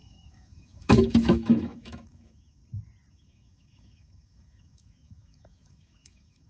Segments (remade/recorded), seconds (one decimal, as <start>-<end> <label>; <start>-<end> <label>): 0.0-2.6 remade; 2.6-3.1 recorded; 3.1-6.5 remade